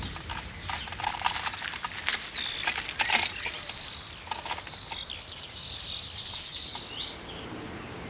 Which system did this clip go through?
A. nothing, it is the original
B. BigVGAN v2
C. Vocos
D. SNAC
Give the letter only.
A